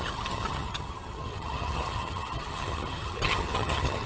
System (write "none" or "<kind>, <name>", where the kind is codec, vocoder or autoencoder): vocoder, HiFi-GAN